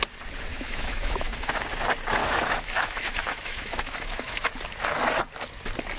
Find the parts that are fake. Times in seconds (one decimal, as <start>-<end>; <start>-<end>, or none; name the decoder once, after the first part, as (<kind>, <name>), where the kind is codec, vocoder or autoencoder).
0.5-1.6 (autoencoder, DAC-VAE); 2.2-4.5